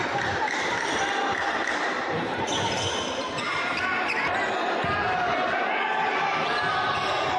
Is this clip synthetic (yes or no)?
no